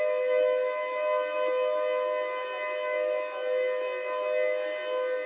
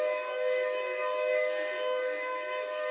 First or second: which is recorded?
first